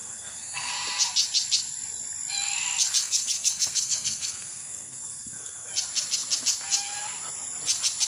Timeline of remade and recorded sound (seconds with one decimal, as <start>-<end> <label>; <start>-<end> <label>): 0.0-0.7 remade; 0.7-3.0 recorded; 3.0-5.7 remade; 5.7-8.1 recorded